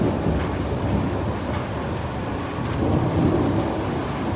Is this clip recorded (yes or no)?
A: yes